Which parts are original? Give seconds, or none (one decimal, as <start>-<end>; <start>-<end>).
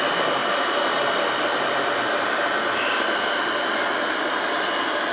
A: 0.0-5.1